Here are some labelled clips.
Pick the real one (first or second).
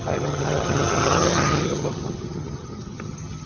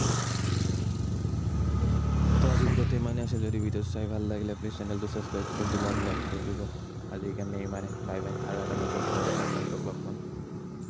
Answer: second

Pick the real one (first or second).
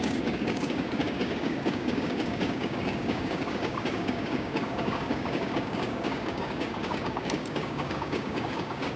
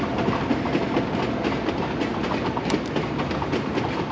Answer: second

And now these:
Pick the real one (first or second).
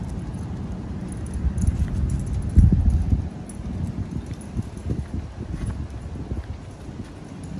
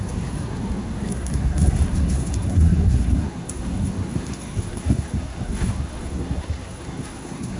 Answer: first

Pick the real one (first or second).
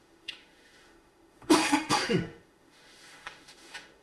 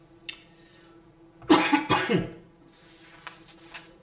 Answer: second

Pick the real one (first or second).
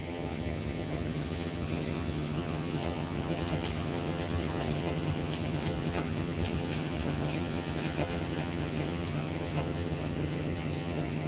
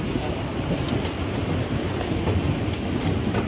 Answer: second